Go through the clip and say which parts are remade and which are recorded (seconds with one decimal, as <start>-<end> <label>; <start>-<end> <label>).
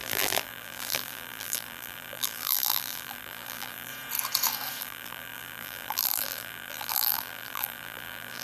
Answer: 0.0-3.9 remade; 3.9-4.8 recorded; 4.8-8.4 remade